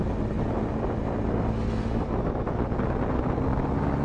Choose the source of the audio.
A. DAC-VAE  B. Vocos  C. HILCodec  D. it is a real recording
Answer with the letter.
D